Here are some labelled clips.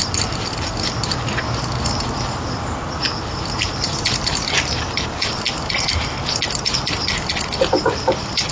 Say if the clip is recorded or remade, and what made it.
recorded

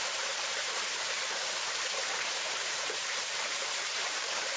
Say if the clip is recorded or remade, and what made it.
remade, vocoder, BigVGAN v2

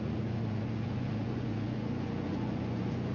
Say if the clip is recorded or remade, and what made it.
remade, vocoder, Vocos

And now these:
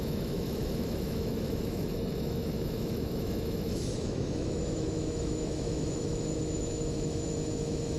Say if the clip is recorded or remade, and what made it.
remade, autoencoder, DAC-VAE